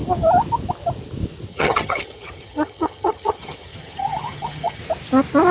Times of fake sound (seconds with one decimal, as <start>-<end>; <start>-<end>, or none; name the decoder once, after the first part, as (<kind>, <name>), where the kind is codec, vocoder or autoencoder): 1.5-4.8 (vocoder, HiFi-GAN)